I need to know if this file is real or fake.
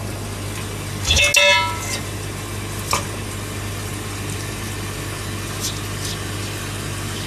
real